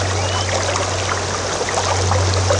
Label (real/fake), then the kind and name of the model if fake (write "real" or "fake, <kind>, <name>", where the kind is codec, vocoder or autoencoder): real